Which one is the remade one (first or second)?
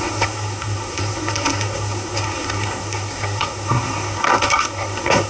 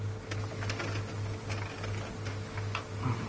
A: first